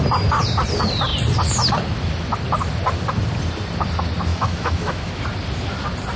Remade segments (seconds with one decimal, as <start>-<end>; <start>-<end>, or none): 4.3-5.1